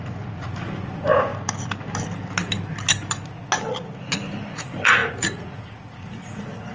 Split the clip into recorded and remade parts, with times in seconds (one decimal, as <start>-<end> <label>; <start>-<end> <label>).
0.0-1.3 remade; 1.3-4.5 recorded; 4.5-6.7 remade